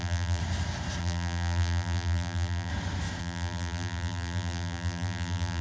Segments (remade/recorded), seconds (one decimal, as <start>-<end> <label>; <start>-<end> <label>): 0.0-0.4 remade; 0.4-1.0 recorded; 1.0-2.7 remade; 2.7-3.2 recorded; 3.2-5.6 remade